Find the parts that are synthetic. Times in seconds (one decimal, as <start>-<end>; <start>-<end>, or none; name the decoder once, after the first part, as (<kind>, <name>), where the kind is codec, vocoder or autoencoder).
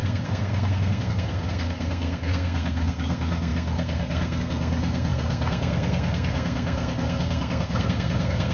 0.0-8.5 (codec, SNAC)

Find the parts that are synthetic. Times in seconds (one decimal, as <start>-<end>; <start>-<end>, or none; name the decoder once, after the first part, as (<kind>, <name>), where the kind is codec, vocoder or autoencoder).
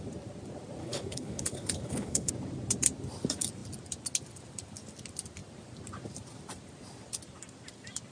0.8-2.3 (codec, HILCodec)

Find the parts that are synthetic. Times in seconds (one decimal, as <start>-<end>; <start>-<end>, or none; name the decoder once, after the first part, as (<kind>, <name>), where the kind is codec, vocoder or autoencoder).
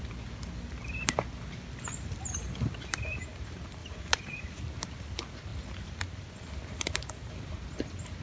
3.8-4.6 (vocoder, Vocos)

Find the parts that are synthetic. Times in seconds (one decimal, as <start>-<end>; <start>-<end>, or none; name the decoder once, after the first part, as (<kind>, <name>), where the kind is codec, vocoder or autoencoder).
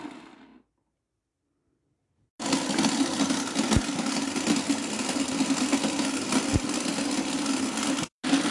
none